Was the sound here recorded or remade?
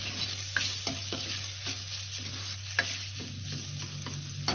recorded